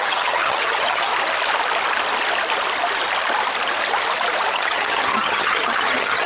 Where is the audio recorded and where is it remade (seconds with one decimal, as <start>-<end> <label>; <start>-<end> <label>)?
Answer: 0.0-1.1 remade; 1.1-4.5 recorded; 4.5-6.3 remade